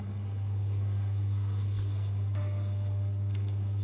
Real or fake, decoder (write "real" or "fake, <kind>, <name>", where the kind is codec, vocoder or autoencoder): fake, codec, SNAC